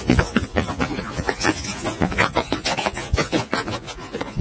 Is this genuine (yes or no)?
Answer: no